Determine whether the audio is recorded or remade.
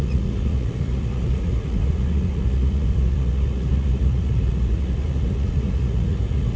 remade